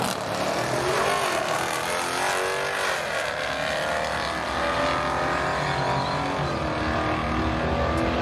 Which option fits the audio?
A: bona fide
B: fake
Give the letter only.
A